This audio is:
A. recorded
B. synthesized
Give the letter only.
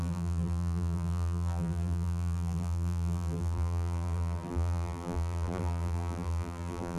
B